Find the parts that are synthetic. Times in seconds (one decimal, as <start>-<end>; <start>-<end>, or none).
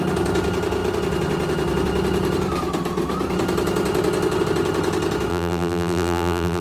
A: 5.3-6.6